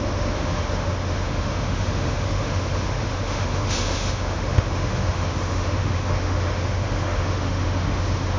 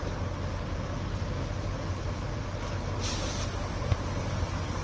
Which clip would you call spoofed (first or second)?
first